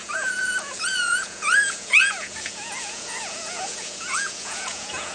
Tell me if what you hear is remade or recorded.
remade